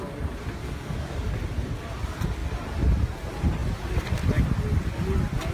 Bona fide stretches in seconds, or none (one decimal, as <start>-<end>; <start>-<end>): 0.0-0.6; 1.3-5.5